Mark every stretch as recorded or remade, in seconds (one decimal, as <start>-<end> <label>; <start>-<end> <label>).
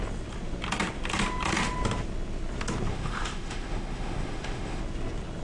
0.0-2.9 recorded; 2.9-4.8 remade; 4.8-5.4 recorded